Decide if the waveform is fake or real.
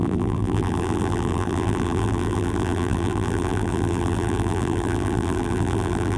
fake